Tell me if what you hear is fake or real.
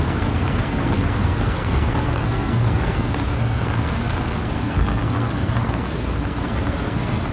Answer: fake